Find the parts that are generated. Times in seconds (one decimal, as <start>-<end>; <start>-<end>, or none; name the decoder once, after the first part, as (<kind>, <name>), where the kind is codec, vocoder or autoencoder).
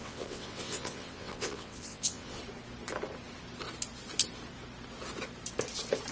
0.0-2.4 (vocoder, WaveNeXt)